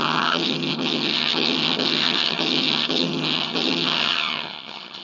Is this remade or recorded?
remade